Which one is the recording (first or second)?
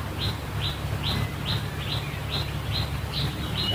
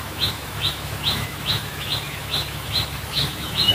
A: first